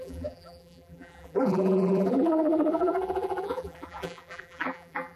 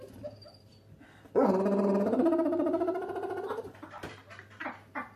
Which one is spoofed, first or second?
first